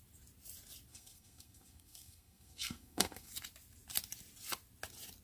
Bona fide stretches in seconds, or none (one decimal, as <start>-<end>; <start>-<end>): 0.0-0.9; 3.3-5.2